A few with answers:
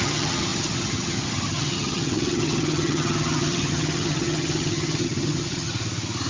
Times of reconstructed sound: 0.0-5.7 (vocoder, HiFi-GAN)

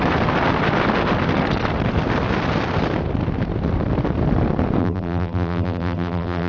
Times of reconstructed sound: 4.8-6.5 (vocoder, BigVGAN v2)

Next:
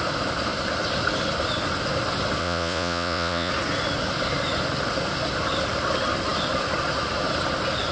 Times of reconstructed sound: 2.4-3.5 (vocoder, Vocos)

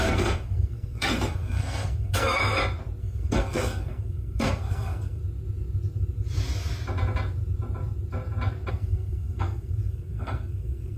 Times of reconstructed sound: 0.0-2.4 (codec, SNAC); 3.0-5.2; 8.7-11.0